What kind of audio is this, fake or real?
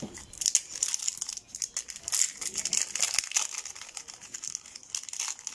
real